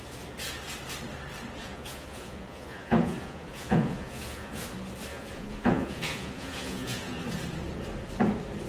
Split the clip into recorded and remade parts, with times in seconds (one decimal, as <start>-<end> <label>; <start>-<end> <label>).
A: 0.0-1.6 recorded; 1.6-4.6 remade; 4.6-5.1 recorded; 5.1-7.2 remade; 7.2-8.7 recorded